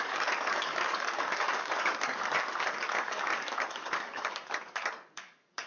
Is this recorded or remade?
remade